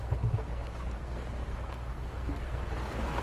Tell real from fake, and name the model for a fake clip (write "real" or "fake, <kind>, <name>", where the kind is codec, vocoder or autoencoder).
fake, codec, SNAC